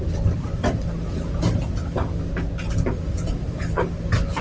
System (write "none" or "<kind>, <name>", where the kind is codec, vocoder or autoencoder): none